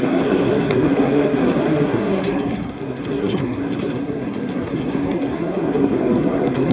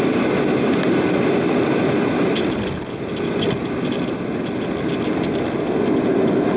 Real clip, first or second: second